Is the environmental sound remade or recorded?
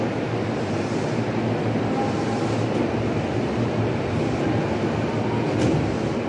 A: recorded